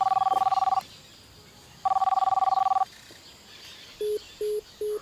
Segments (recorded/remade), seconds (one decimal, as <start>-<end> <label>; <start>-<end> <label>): 0.0-2.0 recorded; 2.0-2.6 remade; 2.6-5.0 recorded